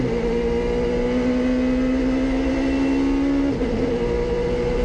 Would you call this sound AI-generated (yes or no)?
no